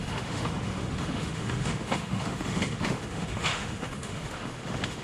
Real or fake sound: fake